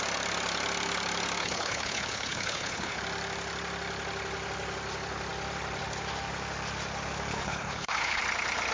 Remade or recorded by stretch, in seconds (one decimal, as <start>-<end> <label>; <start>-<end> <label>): 0.0-1.4 recorded; 1.4-3.0 remade; 3.0-7.3 recorded; 7.3-8.2 remade; 8.2-8.7 recorded